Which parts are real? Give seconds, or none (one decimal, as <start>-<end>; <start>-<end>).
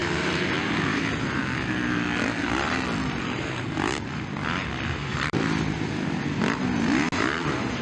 1.4-5.1; 6.2-7.8